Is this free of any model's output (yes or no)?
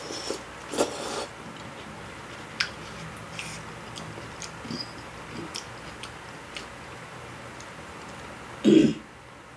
yes